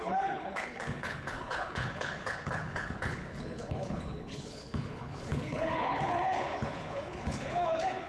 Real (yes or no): no